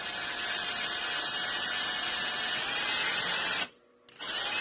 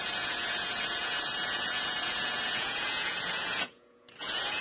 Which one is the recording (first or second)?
first